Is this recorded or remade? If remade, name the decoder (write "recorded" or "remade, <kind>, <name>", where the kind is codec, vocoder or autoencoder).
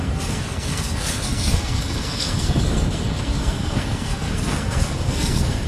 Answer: remade, codec, SNAC